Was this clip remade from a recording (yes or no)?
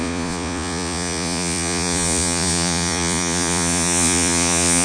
yes